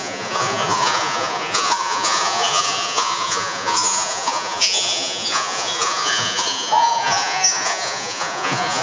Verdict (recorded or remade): remade